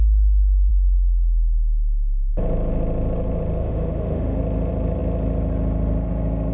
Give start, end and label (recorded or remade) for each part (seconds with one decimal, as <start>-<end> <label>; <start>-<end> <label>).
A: 0.0-3.6 recorded; 3.6-4.4 remade; 4.4-6.5 recorded